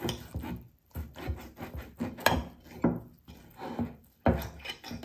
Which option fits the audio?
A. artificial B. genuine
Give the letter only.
B